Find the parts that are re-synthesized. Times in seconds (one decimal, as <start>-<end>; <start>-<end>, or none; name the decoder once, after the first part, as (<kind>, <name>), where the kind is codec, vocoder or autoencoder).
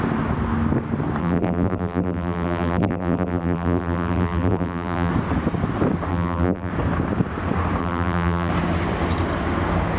1.2-5.1 (vocoder, BigVGAN v2); 6.1-6.7; 7.8-8.5